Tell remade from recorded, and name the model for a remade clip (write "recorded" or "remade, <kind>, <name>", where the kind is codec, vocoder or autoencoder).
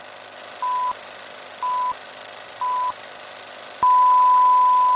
recorded